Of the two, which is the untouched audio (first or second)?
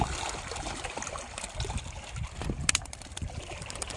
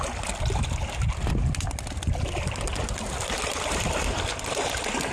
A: second